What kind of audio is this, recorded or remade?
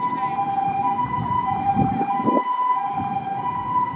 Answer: recorded